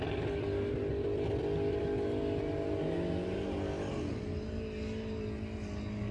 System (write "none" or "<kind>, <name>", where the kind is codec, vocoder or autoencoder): none